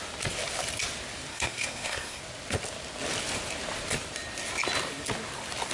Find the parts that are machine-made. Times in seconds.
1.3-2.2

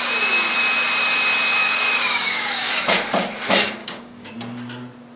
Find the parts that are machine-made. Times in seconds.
1.6-2.7; 3.8-4.3

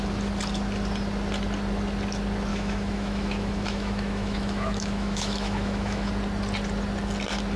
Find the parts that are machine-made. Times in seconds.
2.5-6.1

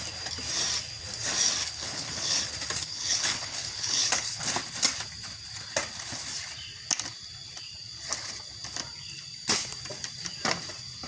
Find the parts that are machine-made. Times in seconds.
1.6-2.4; 2.8-4.4